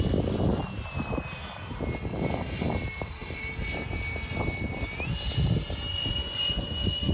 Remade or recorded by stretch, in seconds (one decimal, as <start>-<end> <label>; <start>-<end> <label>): 0.0-5.9 recorded; 5.9-7.1 remade

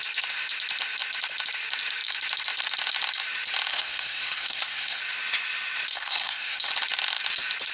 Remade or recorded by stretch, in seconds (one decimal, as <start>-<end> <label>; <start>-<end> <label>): 0.0-3.7 recorded; 3.7-5.0 remade; 5.0-5.9 recorded; 5.9-6.7 remade; 6.7-7.7 recorded

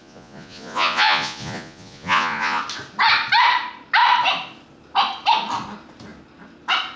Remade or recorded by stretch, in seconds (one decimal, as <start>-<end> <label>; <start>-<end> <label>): 0.0-2.6 remade; 2.6-7.0 recorded

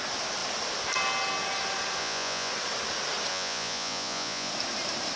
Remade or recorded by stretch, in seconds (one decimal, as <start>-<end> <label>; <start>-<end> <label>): 0.0-2.0 recorded; 2.0-2.5 remade; 2.5-3.3 recorded; 3.3-4.5 remade; 4.5-5.2 recorded